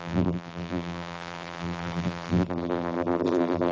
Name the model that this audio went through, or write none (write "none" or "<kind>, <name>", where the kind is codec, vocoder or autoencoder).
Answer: vocoder, BigVGAN v2